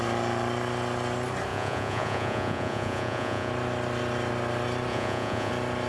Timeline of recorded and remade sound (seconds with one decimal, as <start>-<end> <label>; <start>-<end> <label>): 0.0-1.5 recorded; 1.5-3.5 remade; 3.5-4.9 recorded; 4.9-5.5 remade; 5.5-5.9 recorded